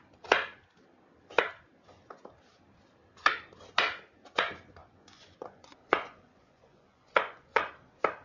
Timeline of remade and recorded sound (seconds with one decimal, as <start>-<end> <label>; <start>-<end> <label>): 0.0-4.8 recorded; 4.8-7.7 remade; 7.7-8.2 recorded